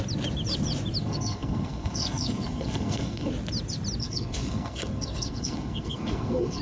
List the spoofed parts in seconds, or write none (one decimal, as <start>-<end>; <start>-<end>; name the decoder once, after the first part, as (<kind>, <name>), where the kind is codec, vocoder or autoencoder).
1.0-3.3 (codec, SNAC); 4.0-6.6